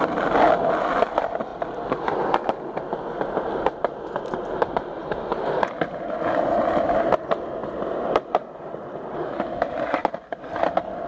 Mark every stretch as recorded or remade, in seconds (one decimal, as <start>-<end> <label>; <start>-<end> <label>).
0.0-11.1 recorded